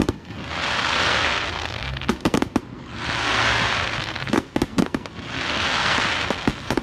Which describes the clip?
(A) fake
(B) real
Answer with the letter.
A